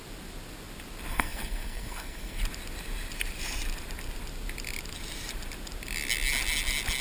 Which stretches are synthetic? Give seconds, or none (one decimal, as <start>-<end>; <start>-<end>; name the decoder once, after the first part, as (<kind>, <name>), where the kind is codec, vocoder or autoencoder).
1.1-2.4 (codec, SNAC)